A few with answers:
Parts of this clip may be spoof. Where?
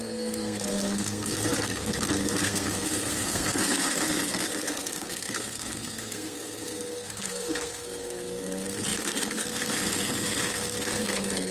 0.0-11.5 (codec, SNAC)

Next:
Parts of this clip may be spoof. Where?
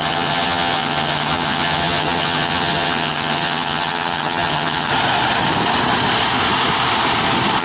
0.0-4.9 (vocoder, HiFi-GAN)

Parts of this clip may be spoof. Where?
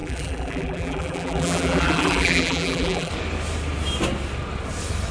0.0-3.1 (vocoder, BigVGAN v2)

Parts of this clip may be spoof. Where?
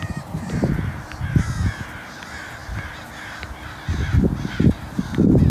none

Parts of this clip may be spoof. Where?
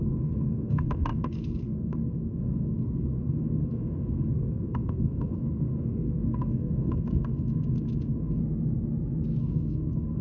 0.0-8.4 (codec, SNAC); 9.4-10.2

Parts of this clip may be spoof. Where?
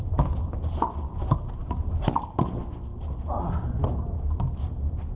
none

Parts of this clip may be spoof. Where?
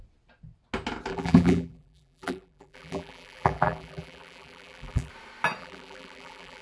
1.1-5.1 (vocoder, BigVGAN v2); 5.6-6.6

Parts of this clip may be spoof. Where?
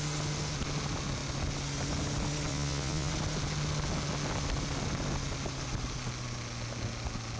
2.5-3.1 (vocoder, Vocos)